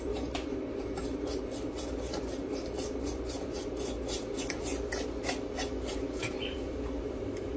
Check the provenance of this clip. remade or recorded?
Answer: remade